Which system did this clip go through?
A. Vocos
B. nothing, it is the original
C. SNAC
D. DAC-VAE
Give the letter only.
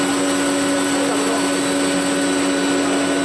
B